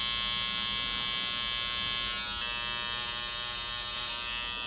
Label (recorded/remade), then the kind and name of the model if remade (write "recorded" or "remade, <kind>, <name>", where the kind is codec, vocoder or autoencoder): recorded